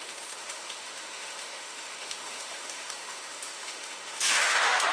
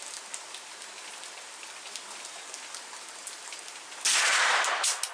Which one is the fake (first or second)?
first